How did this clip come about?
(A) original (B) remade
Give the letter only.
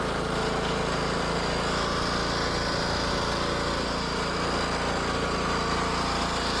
A